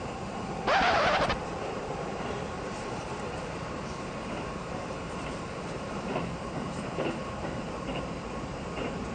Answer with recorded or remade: remade